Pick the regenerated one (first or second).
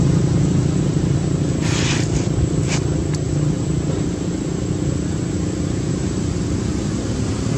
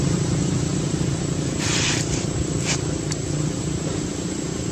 second